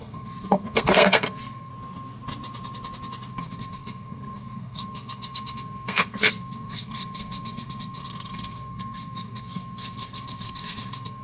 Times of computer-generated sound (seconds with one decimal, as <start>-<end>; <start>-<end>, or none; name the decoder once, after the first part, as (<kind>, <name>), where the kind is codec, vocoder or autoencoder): 0.0-1.7 (codec, SNAC); 3.3-11.2